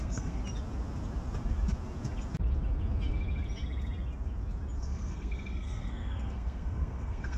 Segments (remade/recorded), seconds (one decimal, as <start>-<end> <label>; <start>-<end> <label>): 0.0-0.4 remade; 0.4-4.8 recorded; 4.8-7.4 remade